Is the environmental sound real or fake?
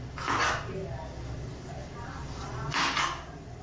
real